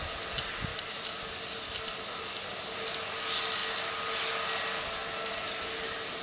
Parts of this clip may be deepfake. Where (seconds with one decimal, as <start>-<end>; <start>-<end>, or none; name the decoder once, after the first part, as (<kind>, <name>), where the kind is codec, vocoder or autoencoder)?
0.7-1.6 (vocoder, BigVGAN v2)

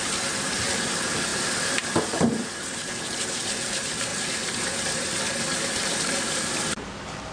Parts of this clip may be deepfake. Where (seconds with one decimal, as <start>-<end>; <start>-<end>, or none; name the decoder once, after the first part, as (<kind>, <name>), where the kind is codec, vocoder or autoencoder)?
1.3-3.0 (vocoder, BigVGAN v2); 4.1-7.3

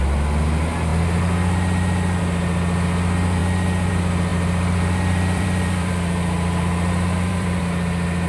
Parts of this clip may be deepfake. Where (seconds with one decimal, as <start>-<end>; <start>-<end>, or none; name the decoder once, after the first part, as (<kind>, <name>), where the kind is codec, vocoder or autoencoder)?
4.3-7.6 (vocoder, BigVGAN v2)

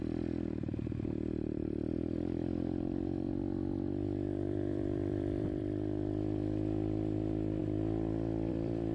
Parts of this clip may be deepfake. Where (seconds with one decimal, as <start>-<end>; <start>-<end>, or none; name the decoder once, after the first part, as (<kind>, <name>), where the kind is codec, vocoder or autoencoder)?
0.0-8.9 (vocoder, BigVGAN v2)

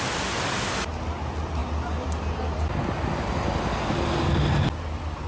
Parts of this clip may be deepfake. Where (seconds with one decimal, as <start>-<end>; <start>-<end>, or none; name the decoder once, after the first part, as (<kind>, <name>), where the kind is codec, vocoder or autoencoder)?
none

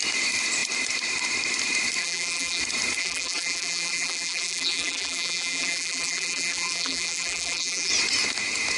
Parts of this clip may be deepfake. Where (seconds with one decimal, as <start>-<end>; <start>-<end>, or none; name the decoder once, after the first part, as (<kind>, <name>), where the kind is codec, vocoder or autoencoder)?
2.0-2.6 (vocoder, BigVGAN v2); 3.0-7.9

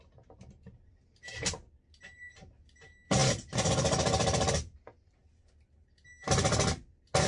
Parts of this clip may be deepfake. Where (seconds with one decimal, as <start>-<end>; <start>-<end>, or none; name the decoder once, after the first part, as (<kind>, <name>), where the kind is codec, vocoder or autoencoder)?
3.2-3.7 (vocoder, BigVGAN v2)